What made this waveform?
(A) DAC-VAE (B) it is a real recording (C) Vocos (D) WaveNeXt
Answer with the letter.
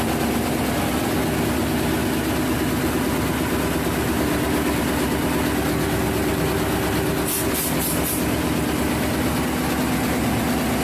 B